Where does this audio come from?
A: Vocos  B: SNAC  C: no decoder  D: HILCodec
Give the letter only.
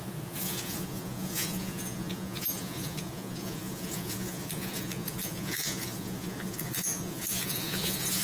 A